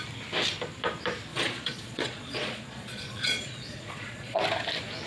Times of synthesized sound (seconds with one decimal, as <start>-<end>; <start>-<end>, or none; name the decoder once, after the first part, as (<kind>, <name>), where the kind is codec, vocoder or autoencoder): 1.3-4.4 (vocoder, Vocos)